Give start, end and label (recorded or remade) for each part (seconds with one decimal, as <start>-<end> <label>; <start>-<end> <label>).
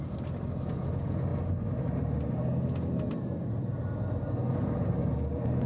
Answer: 0.0-5.7 recorded